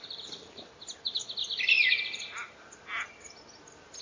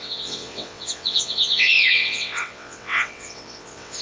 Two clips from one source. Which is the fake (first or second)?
second